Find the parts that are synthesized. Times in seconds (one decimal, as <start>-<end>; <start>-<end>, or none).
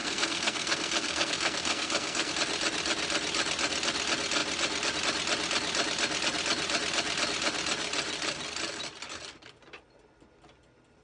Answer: 0.0-2.3